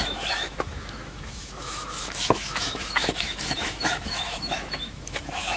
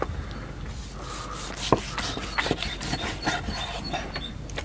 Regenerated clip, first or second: first